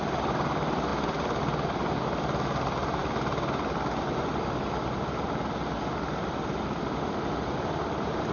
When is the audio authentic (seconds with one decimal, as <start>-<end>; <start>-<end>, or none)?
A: 0.0-8.3